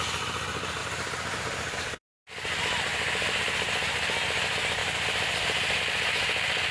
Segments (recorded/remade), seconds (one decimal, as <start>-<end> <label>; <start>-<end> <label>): 0.0-0.8 recorded; 0.8-2.2 remade; 2.2-4.8 recorded; 4.8-5.8 remade; 5.8-6.7 recorded

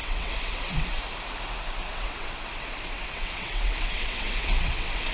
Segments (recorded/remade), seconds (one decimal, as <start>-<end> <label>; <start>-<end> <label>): 0.0-1.0 remade; 1.0-1.9 recorded; 1.9-5.1 remade

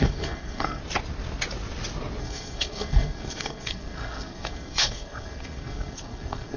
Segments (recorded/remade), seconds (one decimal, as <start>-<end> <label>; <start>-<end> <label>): 0.0-0.8 remade; 0.8-2.2 recorded; 2.2-6.6 remade

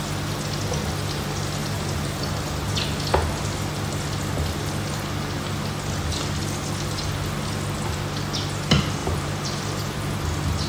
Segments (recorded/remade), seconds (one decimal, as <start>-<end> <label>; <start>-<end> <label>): 0.0-1.6 recorded; 1.6-2.3 remade; 2.3-9.0 recorded; 9.0-10.1 remade; 10.1-10.7 recorded

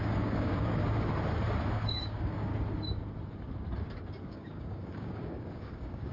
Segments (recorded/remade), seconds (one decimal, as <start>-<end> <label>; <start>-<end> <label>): 0.0-0.8 remade; 0.8-1.7 recorded; 1.7-2.5 remade; 2.5-4.2 recorded; 4.2-6.1 remade

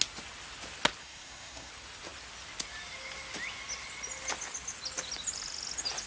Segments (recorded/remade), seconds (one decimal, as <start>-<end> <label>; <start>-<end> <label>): 0.0-1.0 recorded; 1.0-1.7 remade; 1.7-6.1 recorded